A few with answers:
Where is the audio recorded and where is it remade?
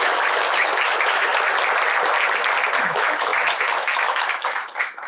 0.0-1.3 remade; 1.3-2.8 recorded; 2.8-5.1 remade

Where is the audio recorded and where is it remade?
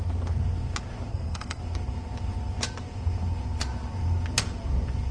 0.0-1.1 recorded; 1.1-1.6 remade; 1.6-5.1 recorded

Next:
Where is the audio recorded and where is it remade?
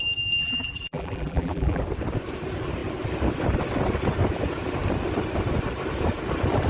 0.0-0.4 recorded; 0.4-1.8 remade; 1.8-6.7 recorded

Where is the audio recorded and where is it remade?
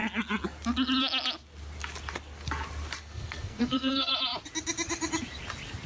0.0-3.0 recorded; 3.0-4.1 remade; 4.1-5.9 recorded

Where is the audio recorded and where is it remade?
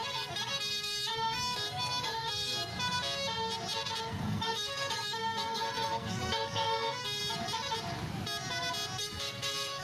0.0-2.7 remade; 2.7-4.0 recorded; 4.0-7.2 remade; 7.2-9.0 recorded; 9.0-9.8 remade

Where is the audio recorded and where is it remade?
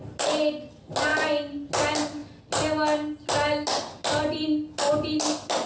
0.0-5.7 recorded